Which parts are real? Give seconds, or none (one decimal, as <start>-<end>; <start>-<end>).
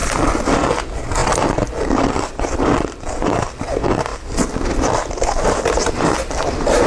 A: 0.7-1.2; 3.6-4.1; 5.7-6.9